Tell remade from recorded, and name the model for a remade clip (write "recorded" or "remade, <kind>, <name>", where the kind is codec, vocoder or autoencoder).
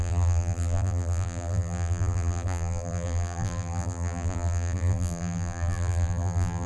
remade, vocoder, BigVGAN v2